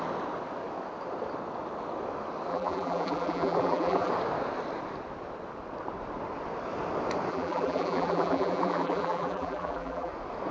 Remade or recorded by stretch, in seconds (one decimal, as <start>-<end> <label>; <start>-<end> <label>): 0.0-2.5 recorded; 2.5-4.1 remade; 4.1-7.3 recorded; 7.3-10.1 remade; 10.1-10.5 recorded